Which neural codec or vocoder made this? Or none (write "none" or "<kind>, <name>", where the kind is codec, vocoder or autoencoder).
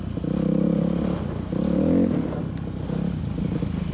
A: none